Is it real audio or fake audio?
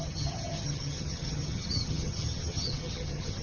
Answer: fake